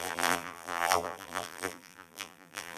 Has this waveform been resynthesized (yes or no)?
yes